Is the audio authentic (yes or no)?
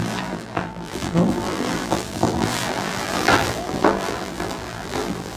no